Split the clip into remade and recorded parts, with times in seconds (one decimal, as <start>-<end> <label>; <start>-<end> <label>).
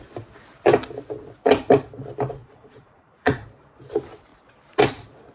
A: 0.0-2.4 recorded; 2.4-3.4 remade; 3.4-5.3 recorded